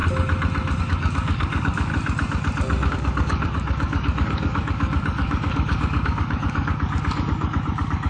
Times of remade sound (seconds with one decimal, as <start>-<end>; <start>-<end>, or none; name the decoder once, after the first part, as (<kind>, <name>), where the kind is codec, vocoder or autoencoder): 0.8-1.9 (codec, DAC); 2.9-8.1

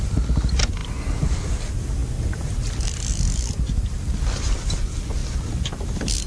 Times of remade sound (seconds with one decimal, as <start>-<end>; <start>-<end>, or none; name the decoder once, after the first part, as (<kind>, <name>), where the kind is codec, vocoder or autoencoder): none

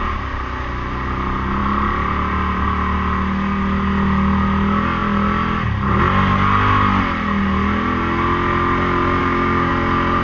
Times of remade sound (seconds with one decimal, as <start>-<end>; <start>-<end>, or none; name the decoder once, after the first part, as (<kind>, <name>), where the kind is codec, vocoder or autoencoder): 9.2-9.7 (codec, DAC)

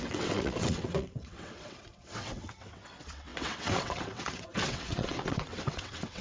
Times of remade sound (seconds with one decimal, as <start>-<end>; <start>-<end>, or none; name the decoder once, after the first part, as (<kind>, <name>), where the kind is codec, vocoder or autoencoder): 0.0-6.2 (vocoder, WaveNeXt)

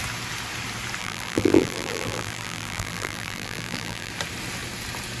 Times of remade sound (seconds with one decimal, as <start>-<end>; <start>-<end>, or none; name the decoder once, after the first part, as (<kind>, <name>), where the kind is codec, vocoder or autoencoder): 1.0-4.1 (vocoder, BigVGAN v2)

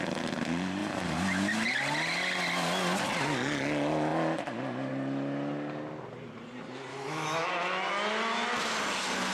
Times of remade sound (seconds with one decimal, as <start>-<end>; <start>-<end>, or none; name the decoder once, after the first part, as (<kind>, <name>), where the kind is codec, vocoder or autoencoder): 6.9-7.5 (autoencoder, DAC-VAE)

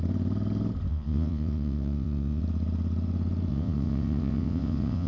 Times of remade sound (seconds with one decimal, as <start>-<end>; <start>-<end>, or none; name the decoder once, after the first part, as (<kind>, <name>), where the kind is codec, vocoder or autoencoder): 0.9-2.4 (vocoder, WaveNeXt); 3.5-5.1

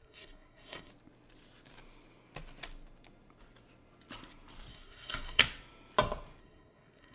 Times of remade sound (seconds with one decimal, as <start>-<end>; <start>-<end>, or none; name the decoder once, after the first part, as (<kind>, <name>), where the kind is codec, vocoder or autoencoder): 0.0-0.9 (codec, SNAC); 4.7-5.4; 6.4-7.1